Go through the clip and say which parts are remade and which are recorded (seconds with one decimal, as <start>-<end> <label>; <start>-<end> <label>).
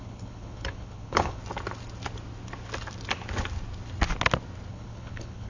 0.0-1.4 remade; 1.4-4.7 recorded; 4.7-5.5 remade